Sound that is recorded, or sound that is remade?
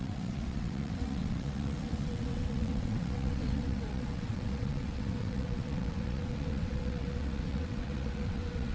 remade